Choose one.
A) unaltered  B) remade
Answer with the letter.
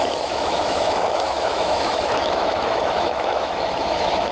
B